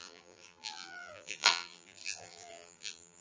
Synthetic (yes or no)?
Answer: yes